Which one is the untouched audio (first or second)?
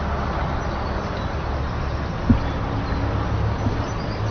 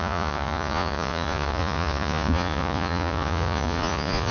first